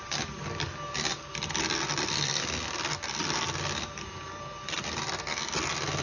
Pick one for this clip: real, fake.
real